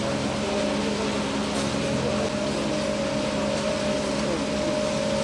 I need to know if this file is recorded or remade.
recorded